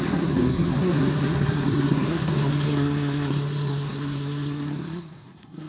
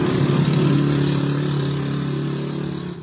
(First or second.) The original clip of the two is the second